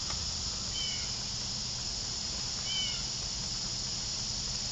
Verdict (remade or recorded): recorded